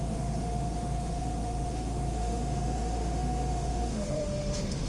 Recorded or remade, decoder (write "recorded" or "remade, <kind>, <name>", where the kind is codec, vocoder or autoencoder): remade, autoencoder, DAC-VAE